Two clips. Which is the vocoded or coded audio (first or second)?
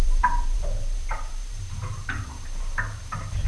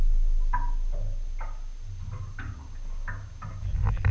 first